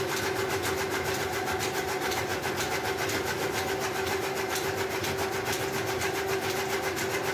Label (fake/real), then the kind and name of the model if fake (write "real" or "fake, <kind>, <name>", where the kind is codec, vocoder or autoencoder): real